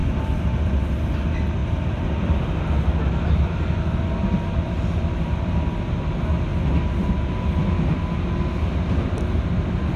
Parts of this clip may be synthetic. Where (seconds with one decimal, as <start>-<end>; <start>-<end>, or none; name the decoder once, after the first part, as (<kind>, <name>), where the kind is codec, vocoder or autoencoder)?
none